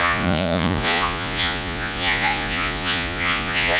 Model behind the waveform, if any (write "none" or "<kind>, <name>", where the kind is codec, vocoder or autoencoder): vocoder, Vocos